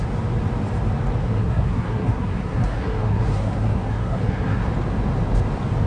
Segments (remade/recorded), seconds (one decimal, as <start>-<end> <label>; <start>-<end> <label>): 0.0-1.2 recorded; 1.2-4.7 remade; 4.7-5.9 recorded

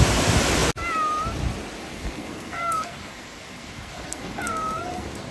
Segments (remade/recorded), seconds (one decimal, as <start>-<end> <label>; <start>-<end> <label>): 0.0-1.9 recorded; 1.9-5.3 remade